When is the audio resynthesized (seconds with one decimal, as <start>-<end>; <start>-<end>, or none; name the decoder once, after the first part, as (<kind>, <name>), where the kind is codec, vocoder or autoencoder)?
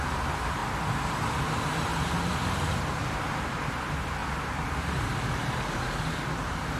0.0-0.6 (vocoder, BigVGAN v2); 1.5-6.8